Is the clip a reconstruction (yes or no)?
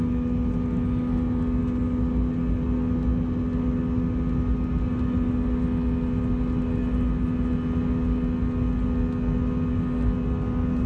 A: no